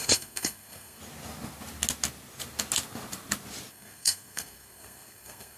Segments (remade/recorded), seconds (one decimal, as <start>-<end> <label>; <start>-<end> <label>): 0.0-1.0 remade; 1.0-3.7 recorded; 3.7-5.6 remade